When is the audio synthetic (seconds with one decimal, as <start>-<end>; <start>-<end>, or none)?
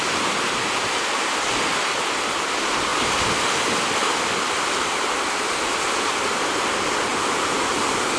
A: 2.9-3.7; 7.1-8.2